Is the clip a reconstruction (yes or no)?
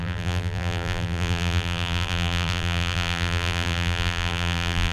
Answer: yes